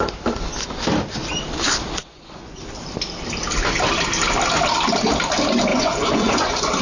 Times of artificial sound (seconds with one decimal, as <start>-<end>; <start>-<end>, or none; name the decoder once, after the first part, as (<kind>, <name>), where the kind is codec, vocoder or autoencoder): 2.0-2.6 (vocoder, Vocos); 5.7-6.8